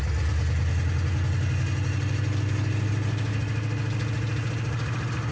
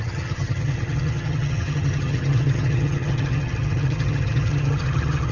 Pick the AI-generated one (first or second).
second